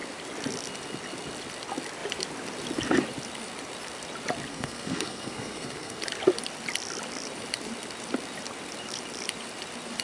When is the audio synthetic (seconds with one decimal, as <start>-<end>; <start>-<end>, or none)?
4.5-6.0